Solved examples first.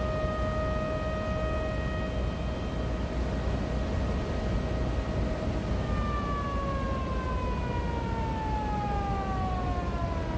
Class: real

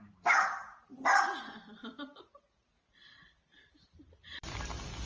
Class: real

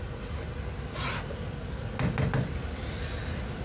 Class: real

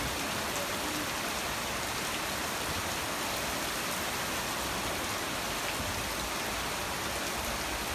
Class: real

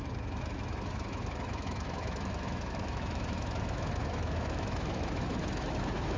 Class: fake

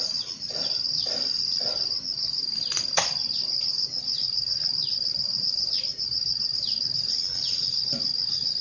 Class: real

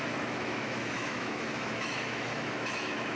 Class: fake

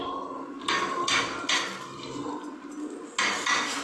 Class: real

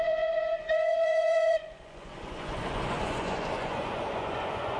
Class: fake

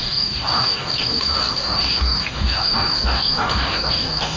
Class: fake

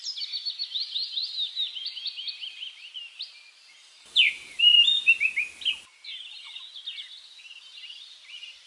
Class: real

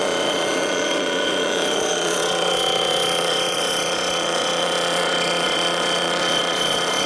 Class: fake